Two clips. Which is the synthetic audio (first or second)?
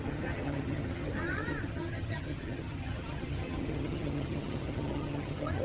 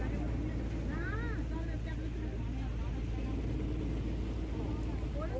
first